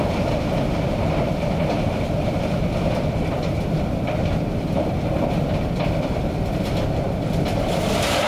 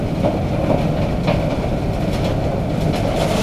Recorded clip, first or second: second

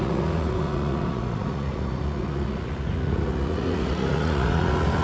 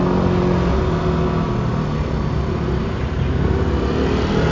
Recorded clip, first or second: second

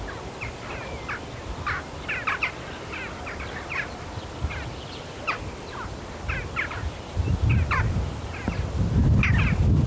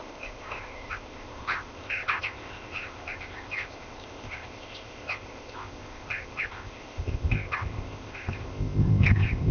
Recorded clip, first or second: first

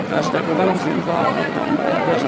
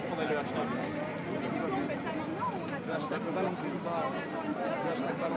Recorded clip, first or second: second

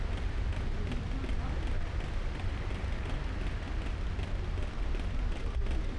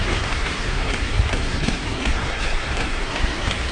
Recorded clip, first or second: first